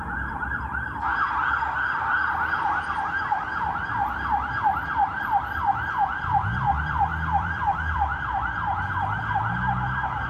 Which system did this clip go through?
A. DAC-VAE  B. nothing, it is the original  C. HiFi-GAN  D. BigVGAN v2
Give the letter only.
D